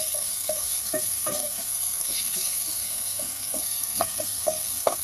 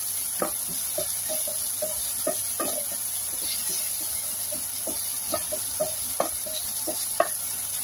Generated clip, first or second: first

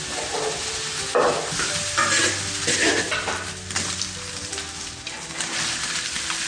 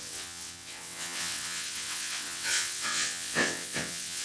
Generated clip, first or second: second